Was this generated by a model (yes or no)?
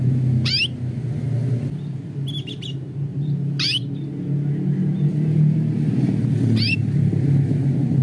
no